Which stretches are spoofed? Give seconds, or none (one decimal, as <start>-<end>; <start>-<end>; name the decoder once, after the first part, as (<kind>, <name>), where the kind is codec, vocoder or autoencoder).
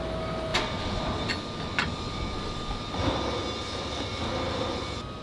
none